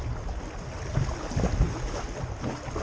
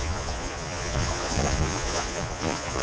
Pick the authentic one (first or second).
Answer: first